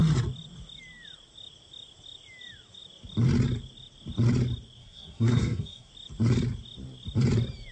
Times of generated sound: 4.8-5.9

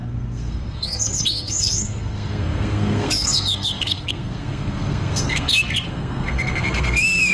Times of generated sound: 0.0-7.3

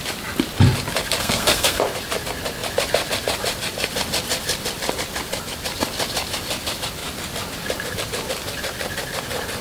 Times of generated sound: 1.2-1.8

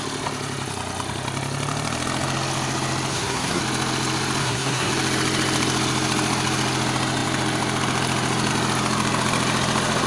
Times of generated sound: 3.1-3.6; 4.4-4.9

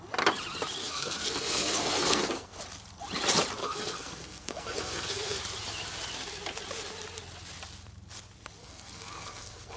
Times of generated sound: 0.8-2.6; 3.6-5.4; 8.6-9.8

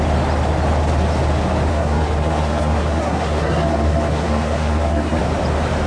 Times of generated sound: 1.7-5.2

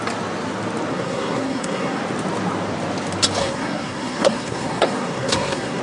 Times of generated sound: 0.9-2.0; 3.4-5.8

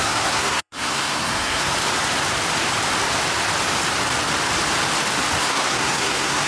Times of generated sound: 0.0-1.7; 5.4-6.5